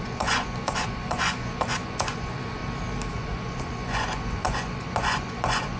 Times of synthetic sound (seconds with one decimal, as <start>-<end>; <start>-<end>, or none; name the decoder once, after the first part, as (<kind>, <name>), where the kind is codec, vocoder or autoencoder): 0.0-2.6 (vocoder, Vocos); 3.1-5.8